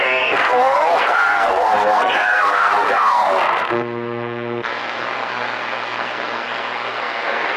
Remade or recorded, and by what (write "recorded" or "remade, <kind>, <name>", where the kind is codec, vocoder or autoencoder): remade, codec, SNAC